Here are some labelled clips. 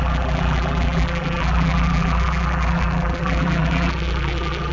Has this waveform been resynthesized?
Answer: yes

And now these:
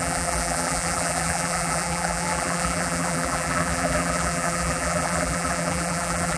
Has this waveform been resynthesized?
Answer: yes